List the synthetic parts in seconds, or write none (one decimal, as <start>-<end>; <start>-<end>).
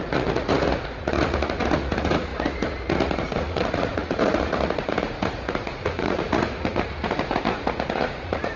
0.0-8.6